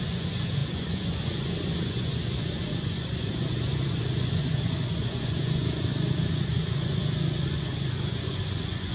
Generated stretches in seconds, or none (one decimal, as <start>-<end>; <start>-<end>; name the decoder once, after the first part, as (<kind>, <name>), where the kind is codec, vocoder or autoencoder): 0.0-8.9 (vocoder, Vocos)

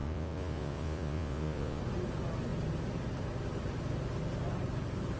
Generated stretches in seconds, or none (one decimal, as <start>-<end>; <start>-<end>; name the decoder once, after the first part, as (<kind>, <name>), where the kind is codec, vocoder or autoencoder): 0.0-1.8 (vocoder, Vocos)